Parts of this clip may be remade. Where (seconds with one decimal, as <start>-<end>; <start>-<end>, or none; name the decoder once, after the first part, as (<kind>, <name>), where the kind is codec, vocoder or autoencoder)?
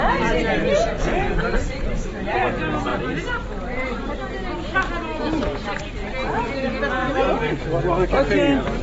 1.6-2.4 (vocoder, BigVGAN v2); 2.9-6.5; 7.0-7.8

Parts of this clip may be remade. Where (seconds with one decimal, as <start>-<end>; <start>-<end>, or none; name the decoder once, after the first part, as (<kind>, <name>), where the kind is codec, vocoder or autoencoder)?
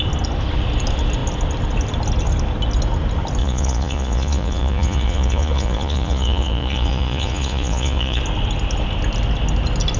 3.4-8.2 (vocoder, Vocos)